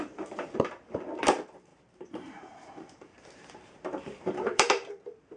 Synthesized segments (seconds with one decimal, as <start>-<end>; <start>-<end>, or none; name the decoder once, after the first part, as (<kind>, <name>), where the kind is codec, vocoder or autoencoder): 0.0-5.4 (vocoder, BigVGAN v2)